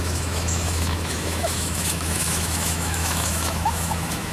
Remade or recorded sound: remade